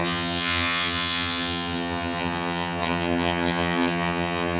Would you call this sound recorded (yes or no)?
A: no